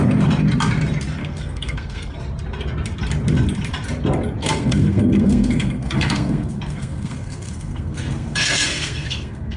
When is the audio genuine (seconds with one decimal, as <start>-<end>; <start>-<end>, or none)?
0.0-1.2; 2.1-4.4